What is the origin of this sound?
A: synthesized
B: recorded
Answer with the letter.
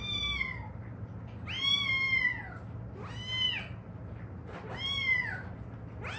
B